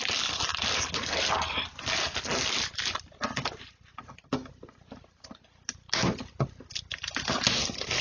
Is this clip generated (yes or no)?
no